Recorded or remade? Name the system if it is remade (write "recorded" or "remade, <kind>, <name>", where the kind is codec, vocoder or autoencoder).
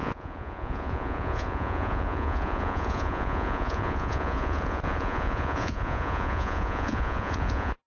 remade, vocoder, Vocos